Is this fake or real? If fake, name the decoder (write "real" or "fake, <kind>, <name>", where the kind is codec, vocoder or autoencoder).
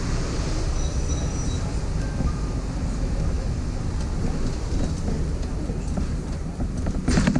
real